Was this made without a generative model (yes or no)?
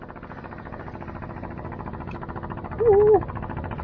yes